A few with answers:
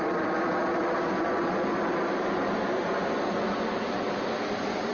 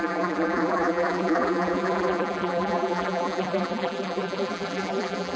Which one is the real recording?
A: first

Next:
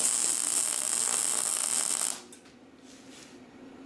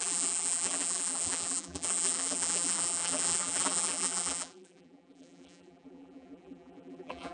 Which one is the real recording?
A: first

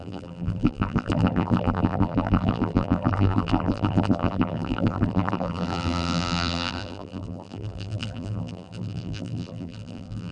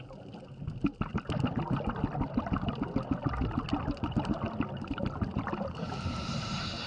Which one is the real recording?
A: second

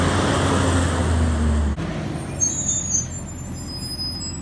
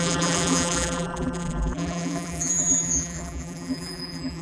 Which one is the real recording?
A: first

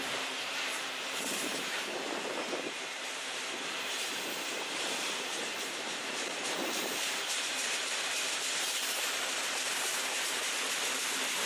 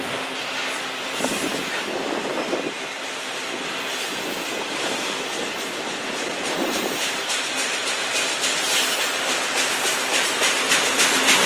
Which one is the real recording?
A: second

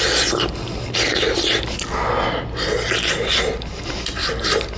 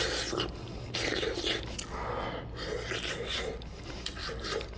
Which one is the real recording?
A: first